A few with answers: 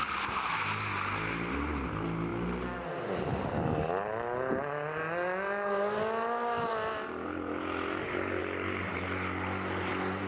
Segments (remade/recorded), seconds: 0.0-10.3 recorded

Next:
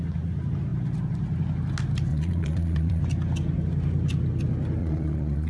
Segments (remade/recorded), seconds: 0.0-2.1 recorded; 2.1-3.0 remade; 3.0-4.8 recorded; 4.8-5.5 remade

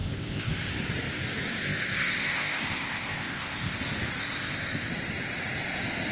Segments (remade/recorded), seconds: 0.0-0.7 remade; 0.7-1.6 recorded; 1.6-3.8 remade; 3.8-4.2 recorded; 4.2-4.9 remade; 4.9-6.1 recorded

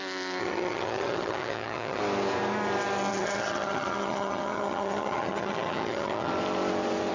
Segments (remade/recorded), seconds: 0.0-0.4 recorded; 0.4-2.0 remade; 2.0-3.1 recorded; 3.1-6.3 remade; 6.3-7.1 recorded

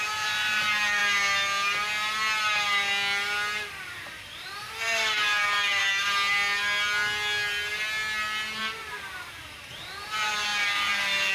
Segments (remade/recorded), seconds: 0.0-1.0 remade; 1.0-3.8 recorded; 3.8-5.8 remade; 5.8-8.6 recorded; 8.6-11.3 remade

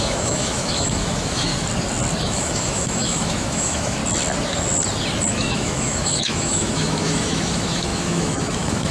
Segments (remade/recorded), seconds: 0.0-1.5 remade; 1.5-2.2 recorded; 2.2-4.0 remade; 4.0-5.3 recorded; 5.3-8.9 remade